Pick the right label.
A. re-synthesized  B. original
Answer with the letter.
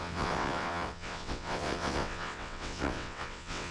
A